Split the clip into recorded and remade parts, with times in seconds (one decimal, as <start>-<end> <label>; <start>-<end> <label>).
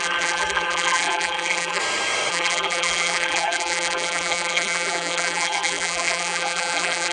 0.0-1.8 remade; 1.8-2.3 recorded; 2.3-7.1 remade